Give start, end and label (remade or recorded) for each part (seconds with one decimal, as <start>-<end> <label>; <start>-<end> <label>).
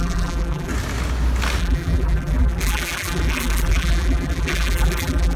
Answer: 0.0-0.7 remade; 0.7-1.6 recorded; 1.6-5.4 remade